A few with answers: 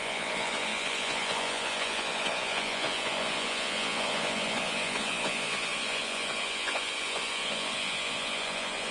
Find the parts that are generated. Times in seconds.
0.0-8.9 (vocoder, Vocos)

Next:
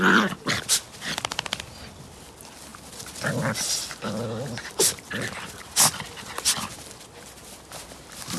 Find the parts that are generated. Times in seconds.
none

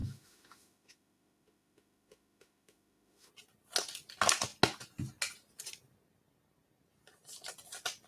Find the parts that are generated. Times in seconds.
0.0-3.3 (autoencoder, DAC-VAE)

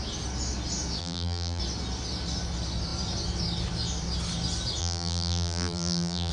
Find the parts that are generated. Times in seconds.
1.0-1.6 (vocoder, BigVGAN v2); 4.8-6.3

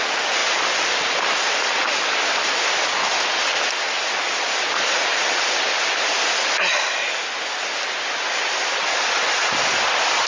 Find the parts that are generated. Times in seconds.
none

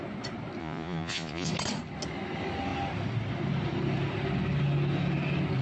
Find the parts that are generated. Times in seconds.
0.6-1.5 (vocoder, Vocos)